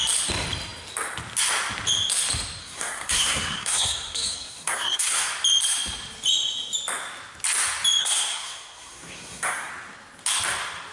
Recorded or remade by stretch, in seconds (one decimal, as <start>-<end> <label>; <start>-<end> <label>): 0.0-2.6 recorded; 2.6-5.3 remade; 5.3-8.0 recorded; 8.0-9.7 remade; 9.7-10.9 recorded